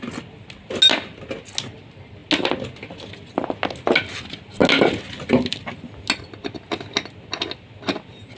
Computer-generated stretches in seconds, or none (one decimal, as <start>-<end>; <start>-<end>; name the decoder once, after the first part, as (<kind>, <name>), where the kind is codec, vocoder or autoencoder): none